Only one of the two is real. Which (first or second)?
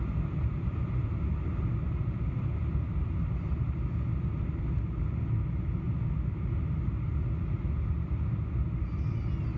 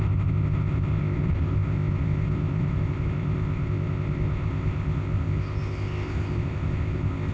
first